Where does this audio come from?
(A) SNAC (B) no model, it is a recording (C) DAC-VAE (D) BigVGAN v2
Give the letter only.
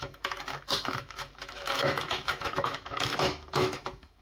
C